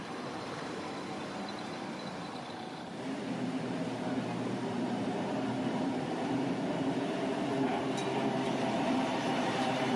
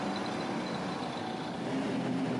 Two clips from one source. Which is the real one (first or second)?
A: second